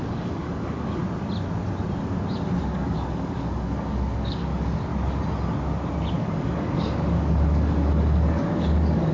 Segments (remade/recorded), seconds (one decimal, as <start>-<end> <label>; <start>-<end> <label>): 0.0-1.0 remade; 1.0-2.6 recorded; 2.6-4.9 remade; 4.9-6.1 recorded; 6.1-9.1 remade